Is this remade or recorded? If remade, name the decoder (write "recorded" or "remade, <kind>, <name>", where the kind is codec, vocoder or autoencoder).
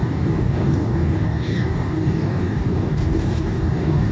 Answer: remade, codec, DAC